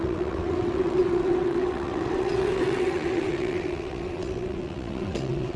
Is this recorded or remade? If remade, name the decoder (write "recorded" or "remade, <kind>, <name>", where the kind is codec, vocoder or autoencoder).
remade, vocoder, WaveNeXt